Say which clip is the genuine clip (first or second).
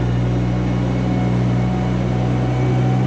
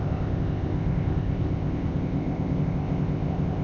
first